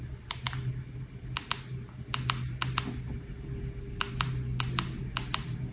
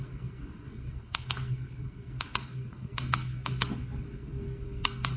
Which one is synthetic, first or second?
second